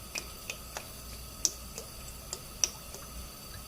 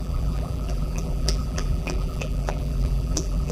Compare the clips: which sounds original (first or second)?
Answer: first